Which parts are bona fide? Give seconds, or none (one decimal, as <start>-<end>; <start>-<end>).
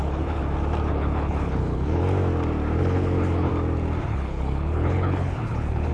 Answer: 0.4-0.9; 2.0-2.8; 3.5-4.0